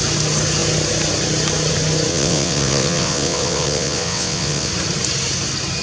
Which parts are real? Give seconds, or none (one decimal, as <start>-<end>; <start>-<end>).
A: 0.0-2.1; 4.7-5.8